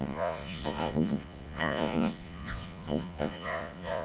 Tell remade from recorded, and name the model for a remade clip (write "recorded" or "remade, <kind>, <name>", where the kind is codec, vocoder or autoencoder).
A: remade, vocoder, Vocos